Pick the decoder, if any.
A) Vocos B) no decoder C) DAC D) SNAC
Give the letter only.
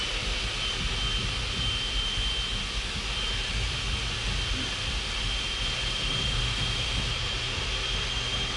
B